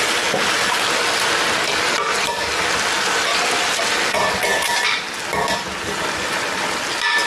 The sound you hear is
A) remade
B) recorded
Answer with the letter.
B